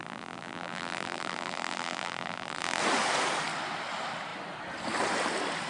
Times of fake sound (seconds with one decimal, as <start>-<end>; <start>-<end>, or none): 0.0-2.8